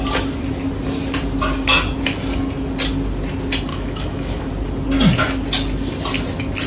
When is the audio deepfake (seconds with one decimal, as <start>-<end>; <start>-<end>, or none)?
3.7-4.5